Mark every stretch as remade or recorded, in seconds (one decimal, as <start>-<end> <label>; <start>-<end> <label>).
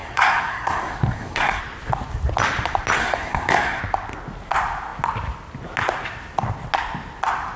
0.0-1.6 remade; 1.6-3.0 recorded; 3.0-3.8 remade; 3.8-7.6 recorded